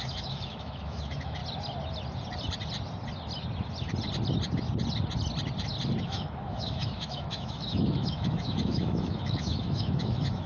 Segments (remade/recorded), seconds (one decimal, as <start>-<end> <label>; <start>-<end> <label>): 0.0-1.4 remade; 1.4-6.0 recorded; 6.0-10.5 remade